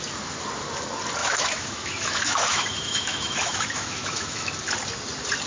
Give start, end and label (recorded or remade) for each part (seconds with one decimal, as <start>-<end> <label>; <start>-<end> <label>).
0.0-1.2 recorded; 1.2-4.5 remade; 4.5-5.5 recorded